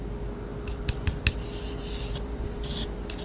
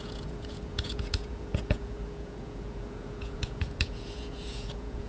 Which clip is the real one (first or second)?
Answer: first